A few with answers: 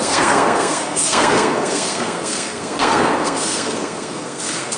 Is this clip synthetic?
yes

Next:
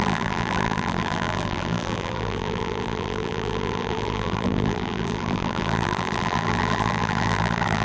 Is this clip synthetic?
yes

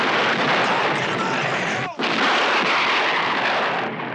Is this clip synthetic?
no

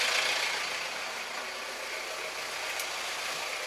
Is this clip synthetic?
no